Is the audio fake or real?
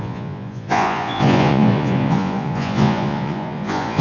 fake